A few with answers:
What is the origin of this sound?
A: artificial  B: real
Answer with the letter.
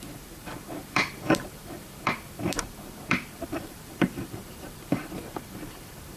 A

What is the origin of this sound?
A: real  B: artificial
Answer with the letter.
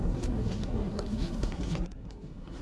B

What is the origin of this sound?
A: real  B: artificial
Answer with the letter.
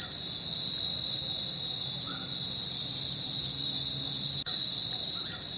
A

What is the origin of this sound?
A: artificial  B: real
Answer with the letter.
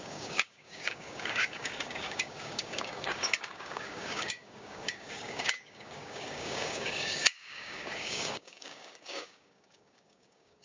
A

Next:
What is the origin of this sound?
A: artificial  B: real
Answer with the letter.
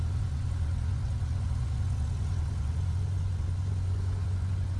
A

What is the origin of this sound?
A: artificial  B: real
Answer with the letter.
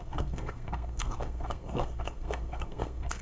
A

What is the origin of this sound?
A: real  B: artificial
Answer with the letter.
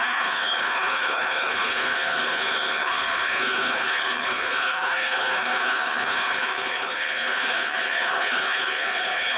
B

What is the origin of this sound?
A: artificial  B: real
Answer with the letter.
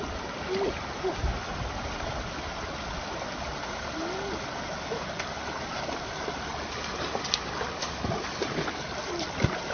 B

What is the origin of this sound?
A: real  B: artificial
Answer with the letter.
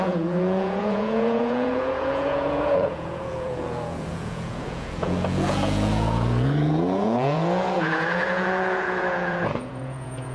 B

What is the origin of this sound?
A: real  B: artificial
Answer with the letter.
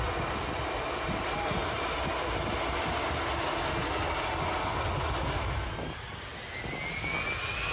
A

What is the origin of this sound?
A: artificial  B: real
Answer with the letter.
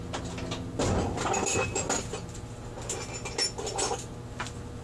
B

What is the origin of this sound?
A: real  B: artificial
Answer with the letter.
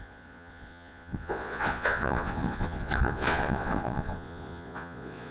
B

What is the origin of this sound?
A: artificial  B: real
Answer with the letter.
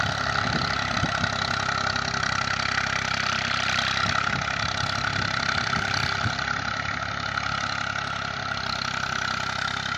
B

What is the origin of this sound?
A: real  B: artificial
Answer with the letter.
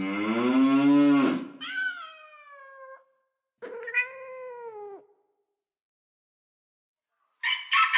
A